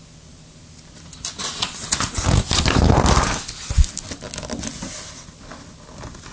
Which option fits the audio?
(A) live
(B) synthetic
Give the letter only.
A